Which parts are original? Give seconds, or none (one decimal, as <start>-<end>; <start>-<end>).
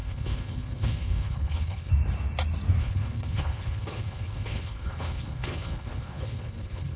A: 1.9-2.8